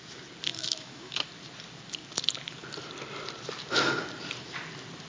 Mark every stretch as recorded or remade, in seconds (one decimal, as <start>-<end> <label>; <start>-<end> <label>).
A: 0.0-0.5 recorded; 0.5-1.3 remade; 1.3-5.1 recorded